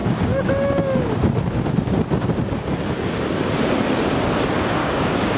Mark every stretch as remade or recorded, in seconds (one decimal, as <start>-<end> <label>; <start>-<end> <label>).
0.0-4.8 recorded; 4.8-5.4 remade